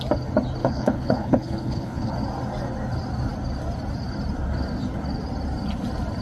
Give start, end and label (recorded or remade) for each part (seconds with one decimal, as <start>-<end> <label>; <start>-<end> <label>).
0.0-0.6 recorded; 0.6-2.1 remade; 2.1-6.2 recorded